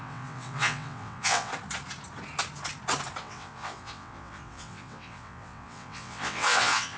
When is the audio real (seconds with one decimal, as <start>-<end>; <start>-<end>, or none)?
1.5-3.2